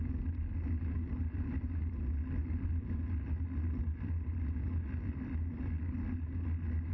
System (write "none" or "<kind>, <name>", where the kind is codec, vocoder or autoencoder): none